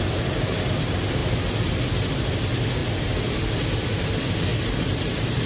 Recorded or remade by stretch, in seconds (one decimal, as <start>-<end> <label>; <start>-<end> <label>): 0.0-5.5 recorded